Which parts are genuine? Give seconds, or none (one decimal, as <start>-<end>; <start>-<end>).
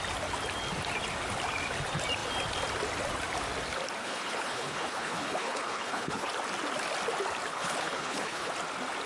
0.0-4.0; 6.3-7.5; 8.5-9.1